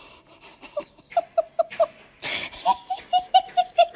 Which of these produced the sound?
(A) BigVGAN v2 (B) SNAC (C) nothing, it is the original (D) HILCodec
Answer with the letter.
C